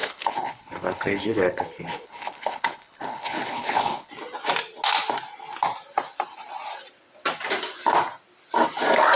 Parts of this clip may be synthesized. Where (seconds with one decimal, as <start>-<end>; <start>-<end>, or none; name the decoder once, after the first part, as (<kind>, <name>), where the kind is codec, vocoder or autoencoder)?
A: 0.0-4.1 (codec, HILCodec)